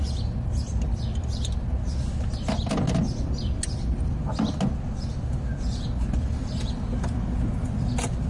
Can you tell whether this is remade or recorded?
recorded